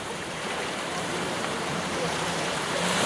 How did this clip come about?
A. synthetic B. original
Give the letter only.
A